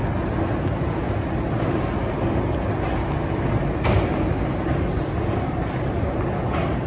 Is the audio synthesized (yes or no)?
no